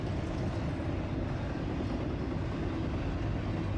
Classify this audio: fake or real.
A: real